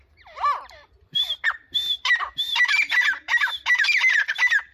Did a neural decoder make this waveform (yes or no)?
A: yes